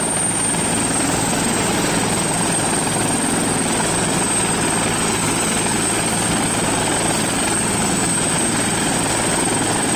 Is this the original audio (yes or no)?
yes